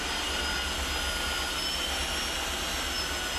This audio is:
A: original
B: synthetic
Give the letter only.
A